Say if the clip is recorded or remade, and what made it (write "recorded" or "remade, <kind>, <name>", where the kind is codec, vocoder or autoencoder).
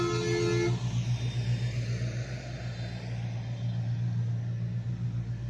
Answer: recorded